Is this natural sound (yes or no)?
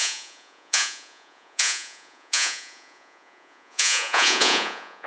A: no